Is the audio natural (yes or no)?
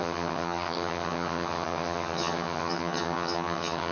no